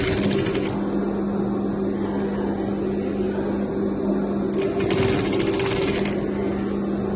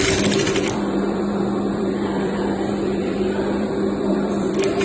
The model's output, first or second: second